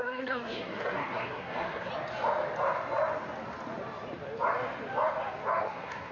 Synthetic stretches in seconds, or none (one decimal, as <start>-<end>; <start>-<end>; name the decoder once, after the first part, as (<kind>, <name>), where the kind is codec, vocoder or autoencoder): 0.0-1.9 (codec, SNAC); 5.6-6.1